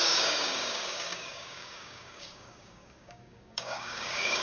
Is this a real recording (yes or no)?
no